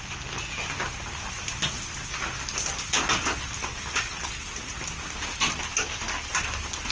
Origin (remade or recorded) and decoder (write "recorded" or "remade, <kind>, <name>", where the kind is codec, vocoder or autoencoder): recorded